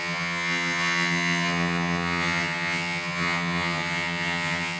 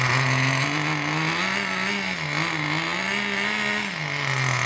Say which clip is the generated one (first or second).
first